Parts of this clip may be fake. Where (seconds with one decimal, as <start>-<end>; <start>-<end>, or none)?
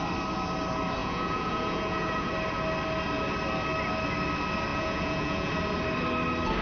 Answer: 1.0-2.3; 4.7-5.5